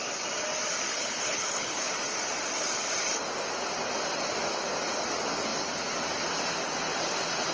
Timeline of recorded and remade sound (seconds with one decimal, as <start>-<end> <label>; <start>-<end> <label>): 0.0-0.9 recorded; 0.9-1.9 remade; 1.9-7.5 recorded